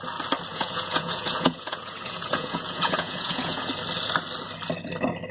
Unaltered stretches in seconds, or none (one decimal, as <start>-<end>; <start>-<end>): 0.0-0.5; 3.7-5.3

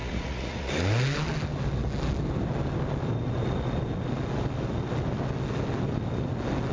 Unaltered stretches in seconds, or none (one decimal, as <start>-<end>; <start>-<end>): 0.7-6.7

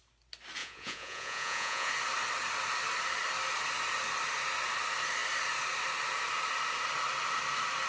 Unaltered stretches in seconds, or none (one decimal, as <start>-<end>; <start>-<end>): 0.0-0.6; 1.9-7.9

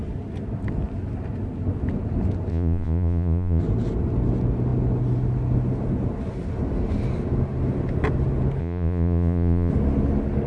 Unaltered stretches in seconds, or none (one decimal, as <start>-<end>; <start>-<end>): 0.0-2.5; 3.6-8.6; 9.7-10.5

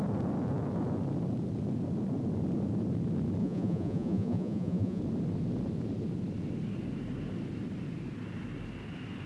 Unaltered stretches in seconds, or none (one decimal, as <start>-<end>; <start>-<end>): 0.0-3.4; 5.0-9.3